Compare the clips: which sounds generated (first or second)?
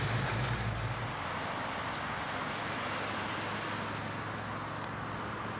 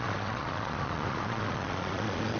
second